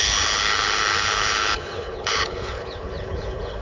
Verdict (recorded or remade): remade